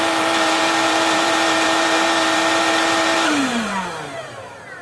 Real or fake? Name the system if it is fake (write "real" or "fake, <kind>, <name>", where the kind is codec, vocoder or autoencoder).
fake, vocoder, BigVGAN v2